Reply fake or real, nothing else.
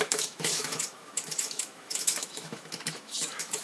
fake